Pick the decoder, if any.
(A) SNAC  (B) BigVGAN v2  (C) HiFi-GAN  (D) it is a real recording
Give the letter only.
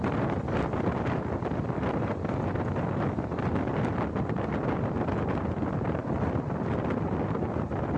D